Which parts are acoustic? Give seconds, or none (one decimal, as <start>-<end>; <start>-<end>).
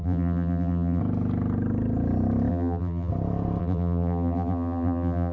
1.0-2.5; 3.1-3.6